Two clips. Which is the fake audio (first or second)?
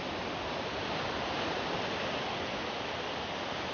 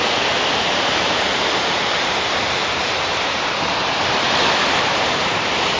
second